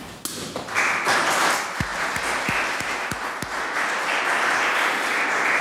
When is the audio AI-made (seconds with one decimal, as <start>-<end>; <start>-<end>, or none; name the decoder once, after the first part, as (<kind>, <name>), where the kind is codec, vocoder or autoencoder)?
none